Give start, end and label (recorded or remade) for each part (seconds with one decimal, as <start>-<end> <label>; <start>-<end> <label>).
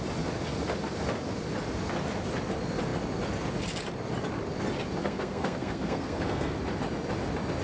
0.0-5.0 recorded; 5.0-6.6 remade; 6.6-7.6 recorded